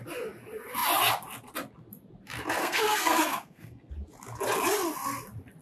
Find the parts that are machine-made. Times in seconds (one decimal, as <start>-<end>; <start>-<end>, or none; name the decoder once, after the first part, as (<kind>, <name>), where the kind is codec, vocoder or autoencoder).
2.6-3.9 (codec, SNAC)